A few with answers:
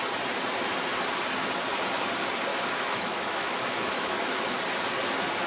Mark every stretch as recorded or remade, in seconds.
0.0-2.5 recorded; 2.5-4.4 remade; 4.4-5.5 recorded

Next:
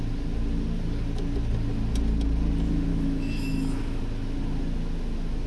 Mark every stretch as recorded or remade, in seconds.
0.0-2.9 recorded; 2.9-4.0 remade; 4.0-5.5 recorded